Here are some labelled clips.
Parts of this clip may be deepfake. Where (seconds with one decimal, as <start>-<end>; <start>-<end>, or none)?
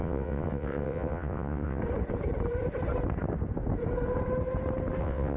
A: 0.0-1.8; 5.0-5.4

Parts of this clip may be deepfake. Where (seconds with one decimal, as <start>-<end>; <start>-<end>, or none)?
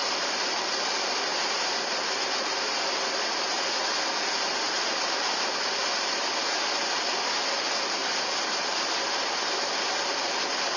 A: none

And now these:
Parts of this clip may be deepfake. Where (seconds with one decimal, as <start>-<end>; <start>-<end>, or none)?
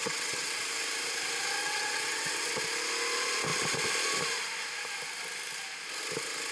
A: 0.0-0.6; 1.6-2.5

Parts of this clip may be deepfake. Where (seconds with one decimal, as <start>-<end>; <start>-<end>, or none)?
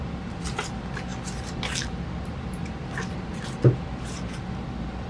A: none